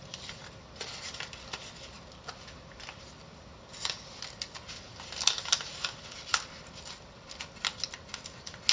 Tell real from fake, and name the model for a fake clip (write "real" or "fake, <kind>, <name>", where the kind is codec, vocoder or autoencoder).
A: real